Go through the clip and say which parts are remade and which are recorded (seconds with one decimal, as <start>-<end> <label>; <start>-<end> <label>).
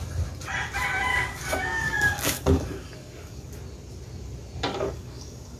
0.0-1.1 recorded; 1.1-3.5 remade; 3.5-4.7 recorded; 4.7-5.6 remade